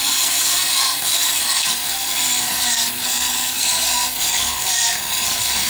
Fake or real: fake